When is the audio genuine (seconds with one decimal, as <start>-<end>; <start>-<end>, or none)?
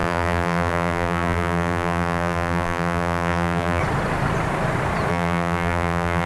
3.8-5.1